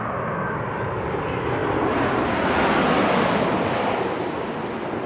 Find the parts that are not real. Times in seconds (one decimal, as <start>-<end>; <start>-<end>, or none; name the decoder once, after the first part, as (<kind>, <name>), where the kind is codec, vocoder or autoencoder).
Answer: none